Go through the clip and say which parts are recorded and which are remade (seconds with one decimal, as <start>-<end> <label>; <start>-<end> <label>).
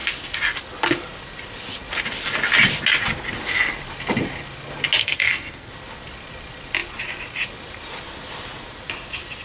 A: 0.0-5.0 recorded; 5.0-5.7 remade; 5.7-9.4 recorded